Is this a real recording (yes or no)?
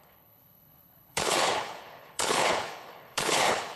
no